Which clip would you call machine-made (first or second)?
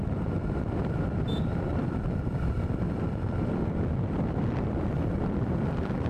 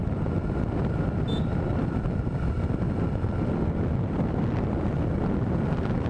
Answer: first